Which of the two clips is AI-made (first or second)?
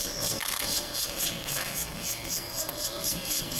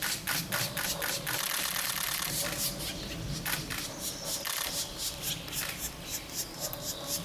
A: first